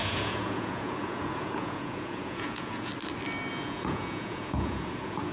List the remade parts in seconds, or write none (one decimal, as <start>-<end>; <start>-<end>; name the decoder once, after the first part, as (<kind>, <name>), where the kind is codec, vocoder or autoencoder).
0.0-2.9 (vocoder, Vocos); 3.5-5.3